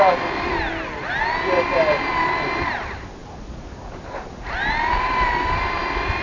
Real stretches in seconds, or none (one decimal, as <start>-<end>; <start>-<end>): 0.0-6.2